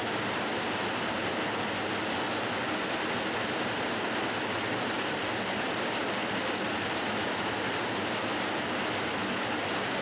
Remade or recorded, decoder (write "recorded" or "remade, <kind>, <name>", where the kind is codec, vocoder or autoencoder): recorded